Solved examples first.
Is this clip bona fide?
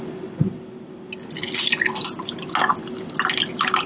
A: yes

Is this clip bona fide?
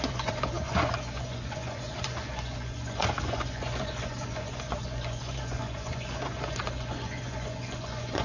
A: no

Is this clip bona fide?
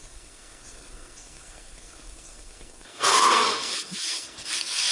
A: no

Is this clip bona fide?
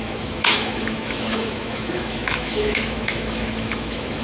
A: no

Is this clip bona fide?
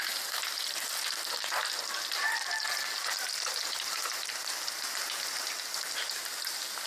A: yes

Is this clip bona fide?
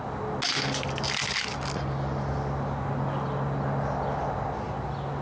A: yes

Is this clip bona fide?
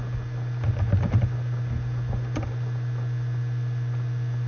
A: yes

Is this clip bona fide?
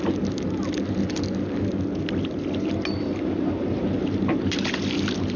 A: yes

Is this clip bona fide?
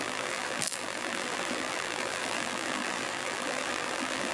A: no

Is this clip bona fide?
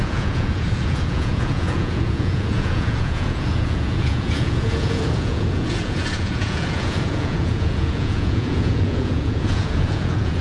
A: no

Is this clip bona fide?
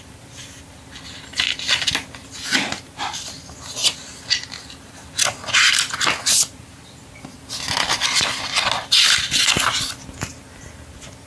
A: yes